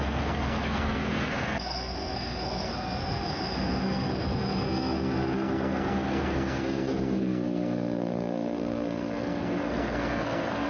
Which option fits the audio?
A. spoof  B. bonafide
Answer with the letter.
A